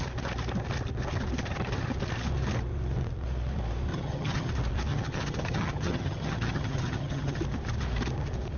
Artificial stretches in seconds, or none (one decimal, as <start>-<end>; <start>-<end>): 3.9-4.5; 4.9-7.4